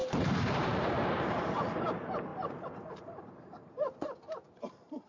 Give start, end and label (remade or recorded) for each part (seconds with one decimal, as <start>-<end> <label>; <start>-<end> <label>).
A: 0.0-2.3 remade; 2.3-2.9 recorded; 2.9-5.1 remade